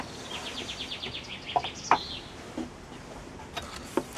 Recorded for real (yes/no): yes